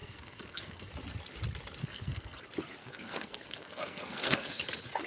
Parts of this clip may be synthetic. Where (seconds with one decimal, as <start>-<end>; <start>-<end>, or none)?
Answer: 0.0-0.9; 1.8-2.4; 2.8-4.6